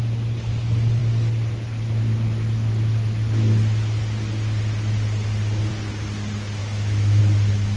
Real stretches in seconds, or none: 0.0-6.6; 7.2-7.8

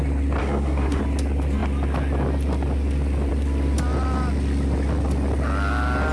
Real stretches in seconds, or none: 0.0-0.4; 1.0-6.1

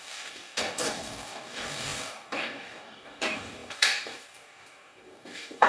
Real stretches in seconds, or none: none

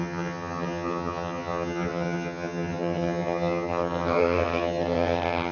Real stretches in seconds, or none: none

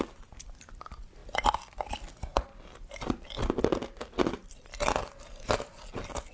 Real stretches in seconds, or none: 0.0-6.3

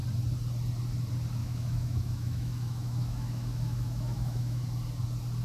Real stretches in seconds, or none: 0.0-1.4; 4.6-5.4